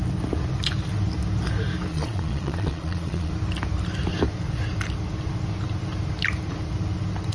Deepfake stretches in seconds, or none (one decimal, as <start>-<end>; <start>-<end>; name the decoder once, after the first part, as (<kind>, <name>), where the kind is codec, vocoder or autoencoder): 1.9-3.3 (vocoder, Vocos)